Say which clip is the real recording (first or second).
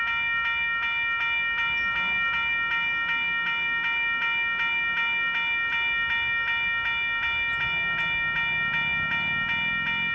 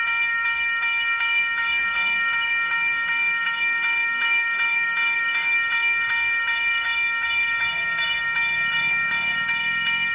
first